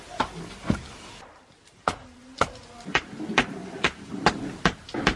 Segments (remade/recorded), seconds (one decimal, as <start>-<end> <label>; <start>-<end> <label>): 0.0-1.3 recorded; 1.3-3.2 remade; 3.2-3.6 recorded; 3.6-4.3 remade; 4.3-5.2 recorded